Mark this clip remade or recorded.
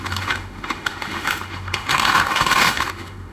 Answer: remade